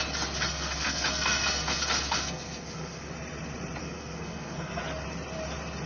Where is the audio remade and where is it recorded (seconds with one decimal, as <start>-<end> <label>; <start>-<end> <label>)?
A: 0.0-0.5 recorded; 0.5-3.1 remade; 3.1-3.8 recorded; 3.8-4.8 remade; 4.8-5.9 recorded